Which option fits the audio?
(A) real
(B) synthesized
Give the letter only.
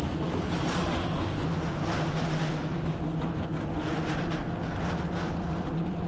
A